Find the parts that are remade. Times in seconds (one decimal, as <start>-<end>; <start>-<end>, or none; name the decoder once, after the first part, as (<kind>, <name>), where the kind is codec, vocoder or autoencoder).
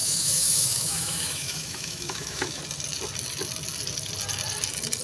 0.0-2.6 (autoencoder, DAC-VAE)